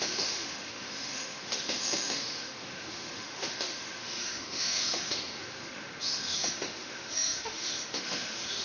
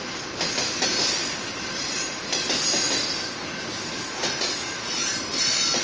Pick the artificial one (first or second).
first